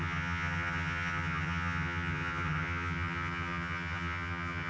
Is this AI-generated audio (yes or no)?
yes